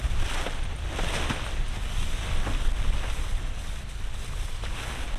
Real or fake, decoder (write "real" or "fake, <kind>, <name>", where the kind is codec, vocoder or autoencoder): real